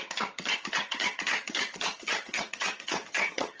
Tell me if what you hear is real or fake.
fake